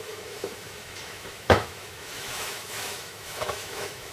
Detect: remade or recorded remade